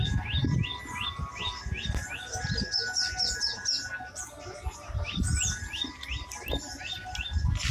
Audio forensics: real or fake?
real